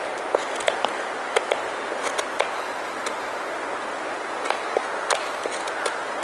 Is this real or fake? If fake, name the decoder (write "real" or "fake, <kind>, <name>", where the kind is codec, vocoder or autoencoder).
real